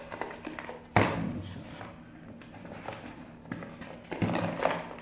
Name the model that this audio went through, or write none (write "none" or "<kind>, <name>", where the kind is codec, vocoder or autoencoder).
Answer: none